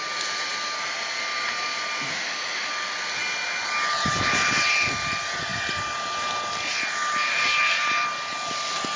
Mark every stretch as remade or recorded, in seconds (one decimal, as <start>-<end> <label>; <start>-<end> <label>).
0.0-2.1 recorded; 2.1-2.7 remade; 2.7-9.0 recorded